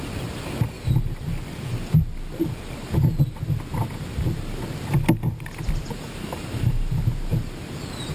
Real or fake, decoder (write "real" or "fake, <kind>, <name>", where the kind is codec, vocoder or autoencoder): real